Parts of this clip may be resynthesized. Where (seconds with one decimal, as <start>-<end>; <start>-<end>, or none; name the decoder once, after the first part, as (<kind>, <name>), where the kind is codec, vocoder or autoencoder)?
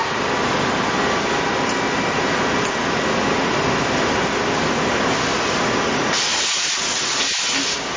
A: 6.3-7.2 (vocoder, Vocos)